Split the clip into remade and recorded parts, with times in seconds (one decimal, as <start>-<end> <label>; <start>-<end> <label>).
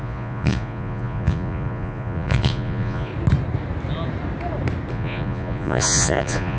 0.0-3.1 remade; 3.1-4.9 recorded; 4.9-6.6 remade